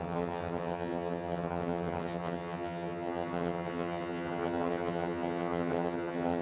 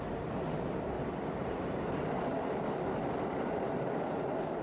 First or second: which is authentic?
second